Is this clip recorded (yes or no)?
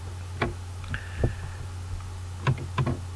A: yes